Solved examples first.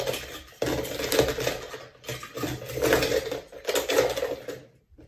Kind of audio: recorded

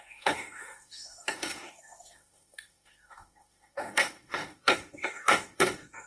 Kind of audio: remade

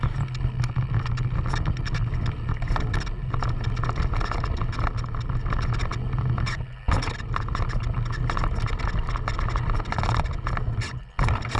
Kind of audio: recorded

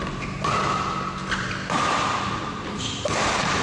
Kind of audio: recorded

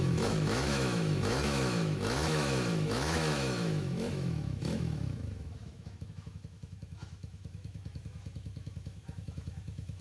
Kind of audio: remade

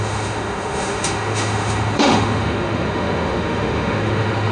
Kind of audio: remade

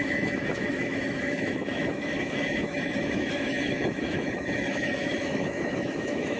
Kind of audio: remade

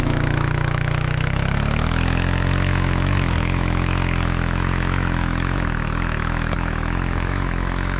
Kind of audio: remade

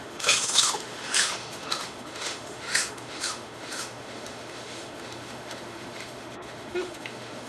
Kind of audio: remade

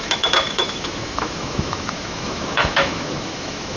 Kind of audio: remade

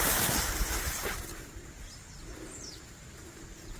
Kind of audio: recorded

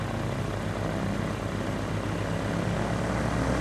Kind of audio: recorded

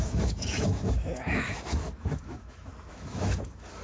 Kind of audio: remade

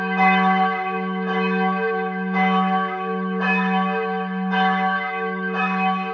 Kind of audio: remade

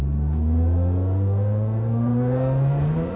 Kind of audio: remade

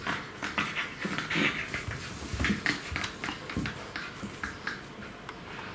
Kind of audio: recorded